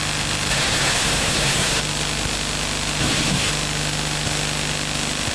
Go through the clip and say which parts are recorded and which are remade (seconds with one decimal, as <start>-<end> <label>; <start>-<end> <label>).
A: 0.0-0.5 recorded; 0.5-1.8 remade; 1.8-3.0 recorded; 3.0-3.5 remade; 3.5-5.3 recorded